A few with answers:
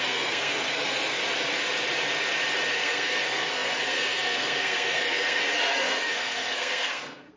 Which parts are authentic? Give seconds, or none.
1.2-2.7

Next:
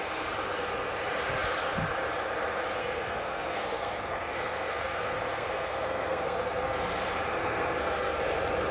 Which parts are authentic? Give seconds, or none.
0.0-2.8; 6.9-7.4; 8.2-8.7

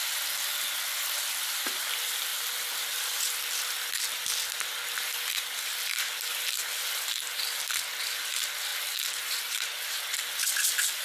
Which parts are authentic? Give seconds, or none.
0.0-11.0

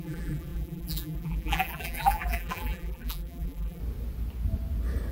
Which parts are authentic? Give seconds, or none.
3.8-5.1

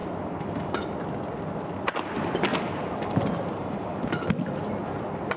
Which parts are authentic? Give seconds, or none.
0.8-2.5; 4.0-5.4

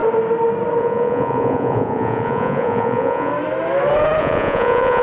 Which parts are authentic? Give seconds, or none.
0.0-0.8; 3.3-4.2

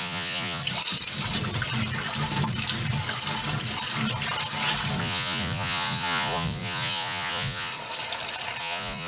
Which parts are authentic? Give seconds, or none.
0.6-5.0; 7.7-8.6

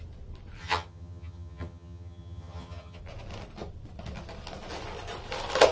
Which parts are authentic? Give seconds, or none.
0.0-0.6; 3.0-5.7